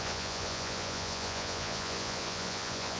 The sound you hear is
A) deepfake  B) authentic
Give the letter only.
A